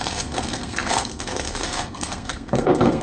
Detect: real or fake fake